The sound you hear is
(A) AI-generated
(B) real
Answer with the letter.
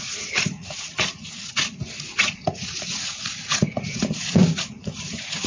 A